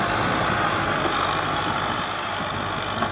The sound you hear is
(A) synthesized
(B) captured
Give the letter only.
B